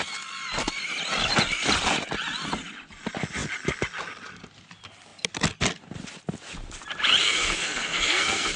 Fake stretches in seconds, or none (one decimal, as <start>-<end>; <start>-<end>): 7.2-8.6